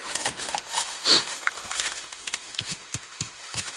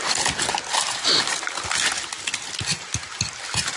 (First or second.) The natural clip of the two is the second